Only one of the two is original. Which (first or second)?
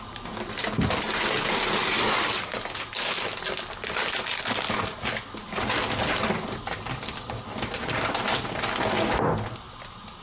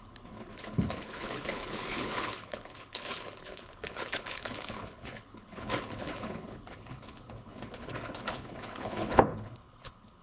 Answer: first